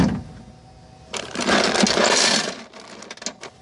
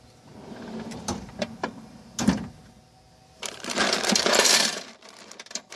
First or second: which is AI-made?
second